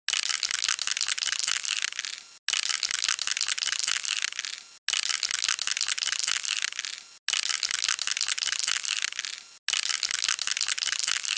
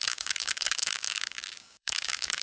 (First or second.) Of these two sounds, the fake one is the second